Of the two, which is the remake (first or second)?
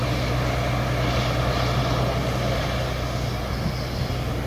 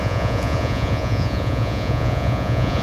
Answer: second